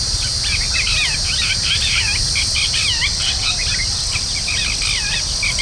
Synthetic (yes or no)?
no